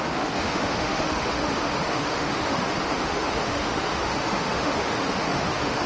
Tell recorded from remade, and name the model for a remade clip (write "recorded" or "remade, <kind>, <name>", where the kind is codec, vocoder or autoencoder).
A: remade, autoencoder, DAC-VAE